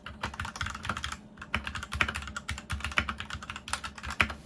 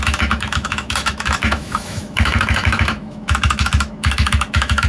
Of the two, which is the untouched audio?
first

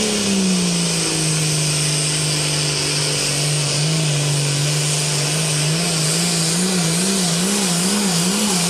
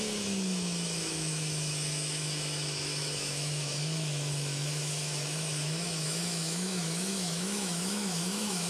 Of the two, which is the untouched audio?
first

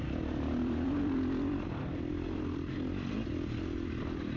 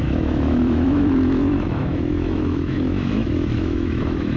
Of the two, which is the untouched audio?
first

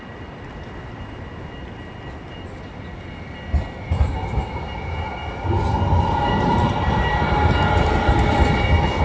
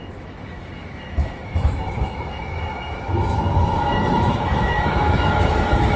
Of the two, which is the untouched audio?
first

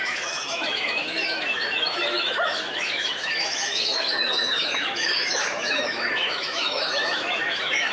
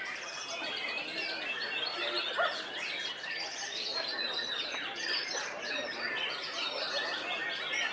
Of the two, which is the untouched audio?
second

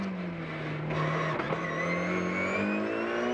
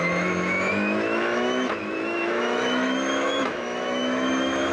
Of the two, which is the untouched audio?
first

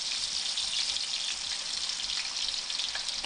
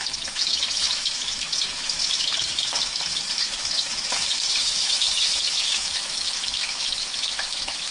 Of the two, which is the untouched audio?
first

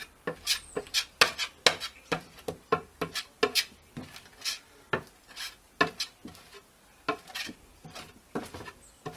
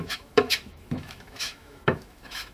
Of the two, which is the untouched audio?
first